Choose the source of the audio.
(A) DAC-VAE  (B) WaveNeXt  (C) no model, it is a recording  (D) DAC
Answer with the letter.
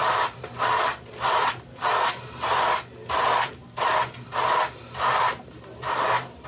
C